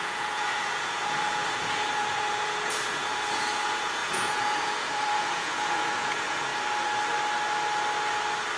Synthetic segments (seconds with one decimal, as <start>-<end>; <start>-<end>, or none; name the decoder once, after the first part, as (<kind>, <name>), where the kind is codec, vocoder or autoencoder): 0.0-6.5 (vocoder, Vocos)

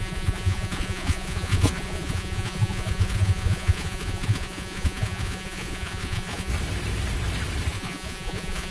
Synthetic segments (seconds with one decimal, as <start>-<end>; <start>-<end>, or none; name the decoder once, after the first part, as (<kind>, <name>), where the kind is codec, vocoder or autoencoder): 0.0-6.5 (vocoder, Vocos); 7.7-8.7

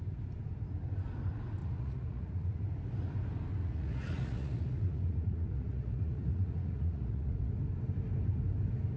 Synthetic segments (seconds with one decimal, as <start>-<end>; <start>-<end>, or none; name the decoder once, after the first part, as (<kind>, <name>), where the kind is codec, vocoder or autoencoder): 1.6-2.6 (vocoder, Vocos); 3.6-7.5

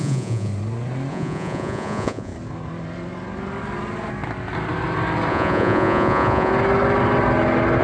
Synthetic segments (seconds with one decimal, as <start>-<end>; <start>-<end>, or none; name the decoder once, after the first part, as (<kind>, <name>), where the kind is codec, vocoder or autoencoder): 0.0-0.5 (vocoder, Vocos); 1.1-2.3; 5.3-6.5

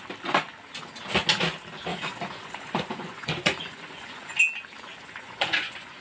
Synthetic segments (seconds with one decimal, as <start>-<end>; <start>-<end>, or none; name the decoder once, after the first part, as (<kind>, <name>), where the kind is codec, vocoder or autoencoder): 1.9-4.4 (vocoder, Vocos); 4.9-6.0